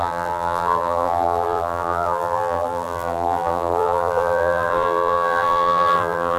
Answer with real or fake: fake